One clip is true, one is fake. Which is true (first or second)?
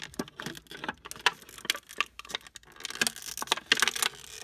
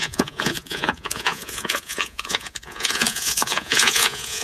first